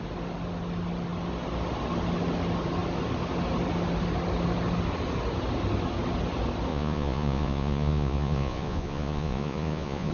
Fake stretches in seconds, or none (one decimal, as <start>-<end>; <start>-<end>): 6.7-10.1